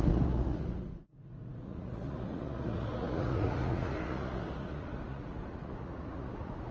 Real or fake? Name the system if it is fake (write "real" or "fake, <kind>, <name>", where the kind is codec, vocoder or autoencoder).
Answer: fake, vocoder, Vocos